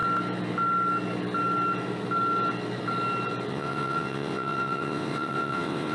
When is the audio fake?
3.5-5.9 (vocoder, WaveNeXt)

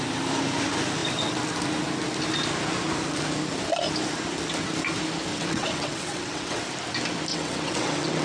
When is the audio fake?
5.3-6.6 (vocoder, WaveNeXt); 7.3-8.2

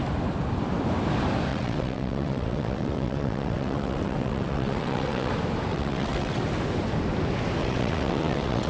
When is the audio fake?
1.5-5.3 (vocoder, WaveNeXt); 5.7-6.4; 7.6-8.7

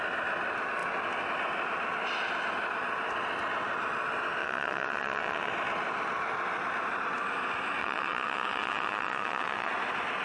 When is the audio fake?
4.4-5.5 (vocoder, WaveNeXt); 7.8-9.7

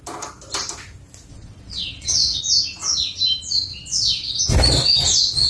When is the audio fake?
1.3-2.4 (vocoder, WaveNeXt); 3.7-4.4

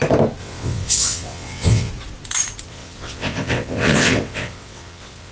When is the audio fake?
0.4-1.9 (vocoder, WaveNeXt); 2.7-5.3